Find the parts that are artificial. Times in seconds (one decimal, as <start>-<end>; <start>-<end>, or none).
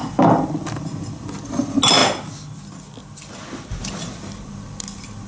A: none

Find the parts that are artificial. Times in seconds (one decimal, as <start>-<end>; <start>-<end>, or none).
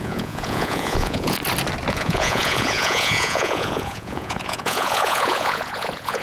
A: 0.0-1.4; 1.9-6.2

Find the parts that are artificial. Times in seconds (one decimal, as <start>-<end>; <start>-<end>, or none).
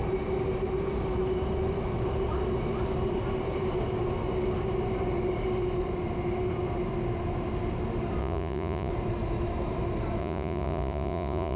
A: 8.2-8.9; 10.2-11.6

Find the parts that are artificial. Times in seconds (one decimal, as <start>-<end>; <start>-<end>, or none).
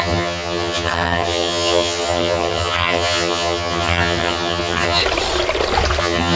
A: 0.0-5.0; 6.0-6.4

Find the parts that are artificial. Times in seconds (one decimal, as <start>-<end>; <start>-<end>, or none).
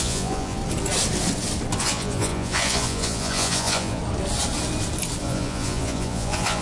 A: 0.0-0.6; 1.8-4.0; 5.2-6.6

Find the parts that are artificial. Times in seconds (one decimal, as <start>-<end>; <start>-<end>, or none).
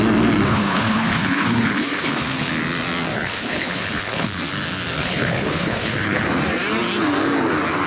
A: 0.5-2.5; 3.1-4.4; 5.0-6.2